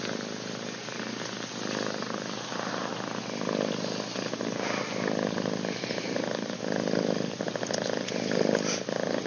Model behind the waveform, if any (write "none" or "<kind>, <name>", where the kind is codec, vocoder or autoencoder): none